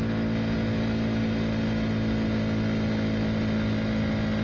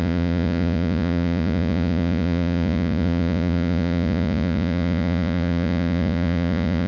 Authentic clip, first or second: first